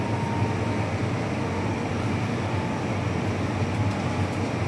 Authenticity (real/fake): real